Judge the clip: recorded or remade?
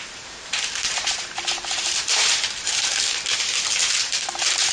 remade